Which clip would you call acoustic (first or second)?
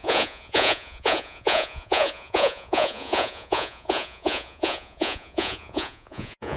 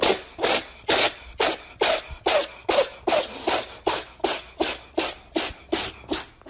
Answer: second